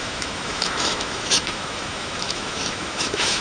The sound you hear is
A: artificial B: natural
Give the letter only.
A